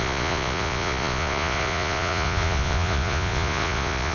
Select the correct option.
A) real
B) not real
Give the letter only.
B